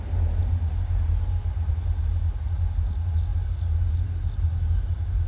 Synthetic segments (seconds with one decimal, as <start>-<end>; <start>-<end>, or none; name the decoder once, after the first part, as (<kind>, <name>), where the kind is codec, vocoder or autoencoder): none